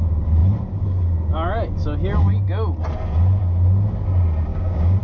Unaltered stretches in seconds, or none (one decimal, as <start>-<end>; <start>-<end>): 0.0-4.5

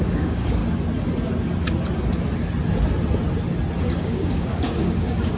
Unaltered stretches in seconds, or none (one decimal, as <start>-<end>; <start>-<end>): 0.6-3.8

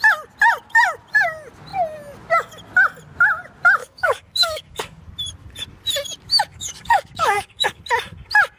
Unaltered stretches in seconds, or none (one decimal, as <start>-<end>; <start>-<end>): 0.0-3.8; 5.0-6.5; 7.8-8.6

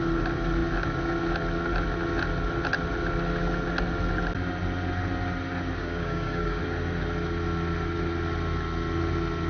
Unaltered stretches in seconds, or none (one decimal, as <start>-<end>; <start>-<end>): 0.0-5.8; 6.6-9.5

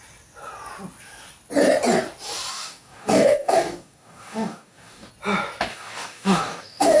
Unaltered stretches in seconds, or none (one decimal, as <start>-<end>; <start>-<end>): 0.0-2.5; 5.1-5.7

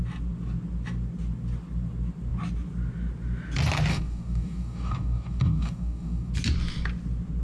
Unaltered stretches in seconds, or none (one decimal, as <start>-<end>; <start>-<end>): 0.0-3.9; 6.3-7.4

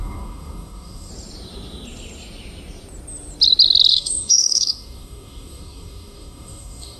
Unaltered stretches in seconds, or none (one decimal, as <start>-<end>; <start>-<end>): 1.1-3.9